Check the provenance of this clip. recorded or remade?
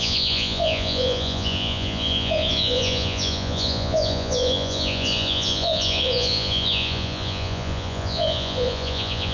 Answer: remade